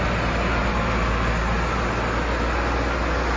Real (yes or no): yes